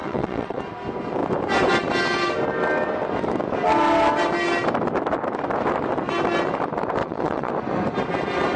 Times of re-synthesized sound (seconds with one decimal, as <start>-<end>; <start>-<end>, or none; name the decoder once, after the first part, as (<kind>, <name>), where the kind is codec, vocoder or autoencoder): 0.0-0.6 (vocoder, WaveNeXt); 7.0-7.5